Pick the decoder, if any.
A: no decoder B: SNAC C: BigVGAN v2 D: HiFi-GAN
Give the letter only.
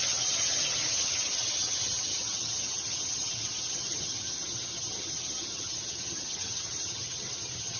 D